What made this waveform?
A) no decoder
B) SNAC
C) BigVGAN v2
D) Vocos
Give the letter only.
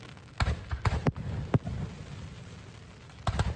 A